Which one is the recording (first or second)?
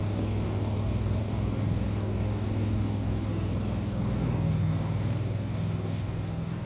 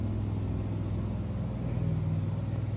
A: second